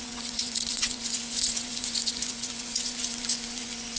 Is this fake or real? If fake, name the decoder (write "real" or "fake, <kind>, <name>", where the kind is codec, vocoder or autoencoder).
fake, vocoder, Vocos